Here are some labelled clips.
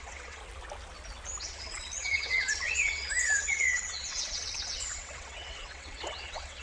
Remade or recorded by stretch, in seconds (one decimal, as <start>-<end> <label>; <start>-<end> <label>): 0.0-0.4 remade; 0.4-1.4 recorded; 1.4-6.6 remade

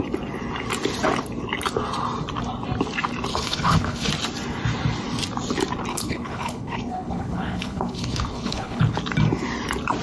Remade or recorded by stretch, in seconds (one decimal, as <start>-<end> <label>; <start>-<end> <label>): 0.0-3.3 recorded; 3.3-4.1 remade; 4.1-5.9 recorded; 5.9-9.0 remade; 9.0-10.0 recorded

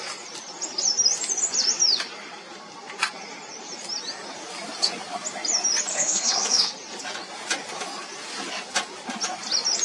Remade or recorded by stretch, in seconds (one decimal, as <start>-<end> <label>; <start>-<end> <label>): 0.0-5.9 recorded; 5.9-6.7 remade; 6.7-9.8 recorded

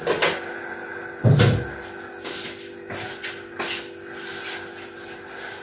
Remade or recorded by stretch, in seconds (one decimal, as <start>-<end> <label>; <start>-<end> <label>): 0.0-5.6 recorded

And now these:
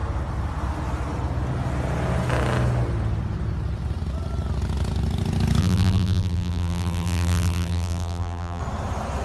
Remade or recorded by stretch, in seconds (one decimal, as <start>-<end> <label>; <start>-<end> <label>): 0.0-5.6 recorded; 5.6-8.6 remade; 8.6-9.2 recorded